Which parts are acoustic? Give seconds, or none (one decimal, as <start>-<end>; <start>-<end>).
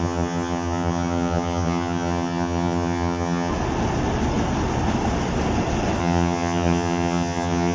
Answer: 3.5-6.0